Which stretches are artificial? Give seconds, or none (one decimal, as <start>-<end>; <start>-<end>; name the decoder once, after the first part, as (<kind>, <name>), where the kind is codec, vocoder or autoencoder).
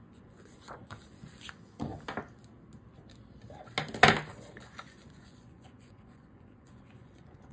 0.0-1.9 (vocoder, Vocos); 4.3-7.5